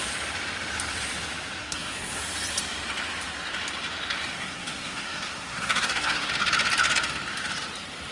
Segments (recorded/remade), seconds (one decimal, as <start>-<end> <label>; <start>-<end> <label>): 0.0-1.6 recorded; 1.6-2.2 remade; 2.2-4.4 recorded; 4.4-6.3 remade; 6.3-8.1 recorded